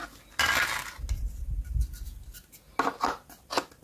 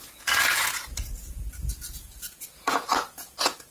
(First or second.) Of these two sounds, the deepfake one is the second